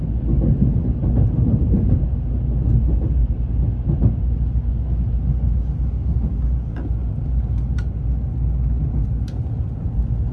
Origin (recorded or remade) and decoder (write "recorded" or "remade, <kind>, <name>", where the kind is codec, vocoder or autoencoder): recorded